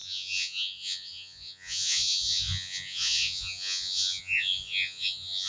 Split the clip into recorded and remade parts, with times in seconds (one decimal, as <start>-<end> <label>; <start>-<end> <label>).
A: 0.0-5.5 remade